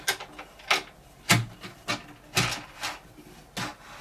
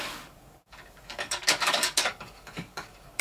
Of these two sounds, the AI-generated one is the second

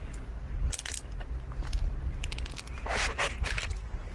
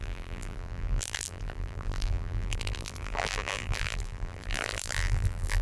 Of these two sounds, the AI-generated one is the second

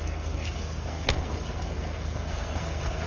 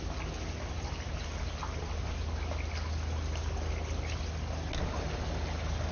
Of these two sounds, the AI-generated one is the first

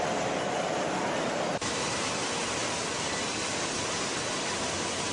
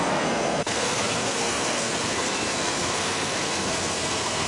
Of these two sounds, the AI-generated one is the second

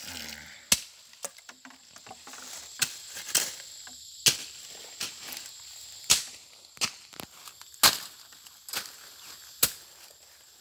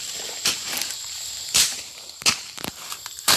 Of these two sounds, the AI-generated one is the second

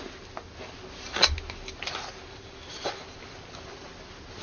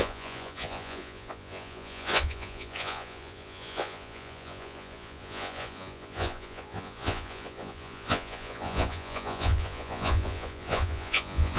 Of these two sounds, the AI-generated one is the second